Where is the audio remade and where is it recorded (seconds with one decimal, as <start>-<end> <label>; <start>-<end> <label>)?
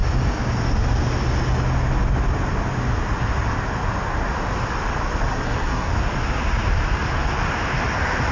0.0-5.3 recorded; 5.3-5.9 remade; 5.9-8.3 recorded